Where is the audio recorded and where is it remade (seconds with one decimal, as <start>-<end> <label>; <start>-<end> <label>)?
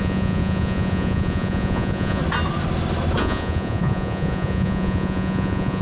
0.0-2.2 remade; 2.2-3.2 recorded; 3.2-5.8 remade